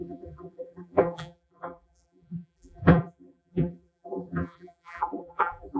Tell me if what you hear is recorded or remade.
remade